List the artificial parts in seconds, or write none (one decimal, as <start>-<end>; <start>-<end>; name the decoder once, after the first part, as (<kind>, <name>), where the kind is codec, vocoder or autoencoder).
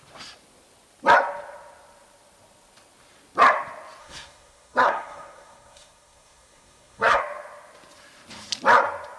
4.0-7.2 (codec, SNAC)